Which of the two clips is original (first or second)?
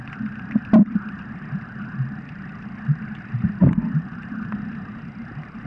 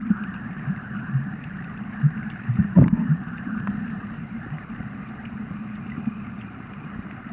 first